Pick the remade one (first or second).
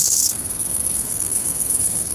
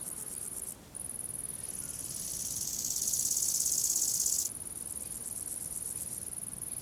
first